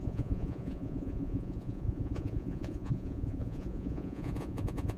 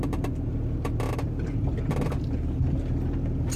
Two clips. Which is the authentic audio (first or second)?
second